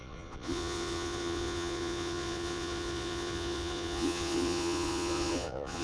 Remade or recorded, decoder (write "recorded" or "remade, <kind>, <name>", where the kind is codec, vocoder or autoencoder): remade, vocoder, Vocos